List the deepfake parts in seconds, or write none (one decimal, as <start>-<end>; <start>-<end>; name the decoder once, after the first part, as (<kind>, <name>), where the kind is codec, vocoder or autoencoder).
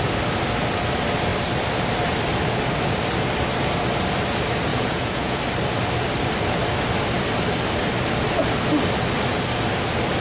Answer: 4.7-5.4 (vocoder, Vocos)